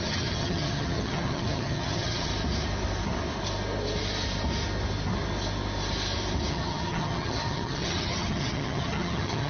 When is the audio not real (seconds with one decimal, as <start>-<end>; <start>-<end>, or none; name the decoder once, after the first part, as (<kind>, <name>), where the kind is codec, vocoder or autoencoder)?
0.0-2.3 (vocoder, HiFi-GAN); 6.5-9.5